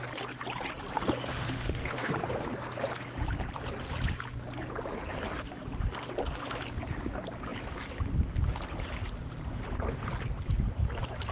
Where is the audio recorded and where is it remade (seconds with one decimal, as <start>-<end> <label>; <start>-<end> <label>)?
0.0-1.3 recorded; 1.3-2.1 remade; 2.1-11.3 recorded